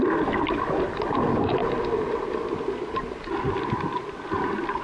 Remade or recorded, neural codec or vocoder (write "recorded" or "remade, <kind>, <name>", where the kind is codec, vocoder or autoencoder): recorded